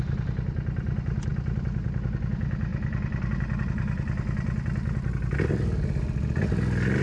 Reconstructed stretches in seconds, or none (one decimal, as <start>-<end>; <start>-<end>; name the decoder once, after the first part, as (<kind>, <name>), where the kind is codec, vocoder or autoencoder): none